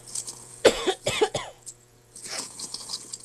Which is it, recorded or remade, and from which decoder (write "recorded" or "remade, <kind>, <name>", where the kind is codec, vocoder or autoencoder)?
remade, vocoder, Vocos